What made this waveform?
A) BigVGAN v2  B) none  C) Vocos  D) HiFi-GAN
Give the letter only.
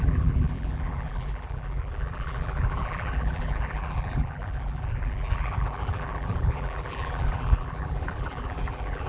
A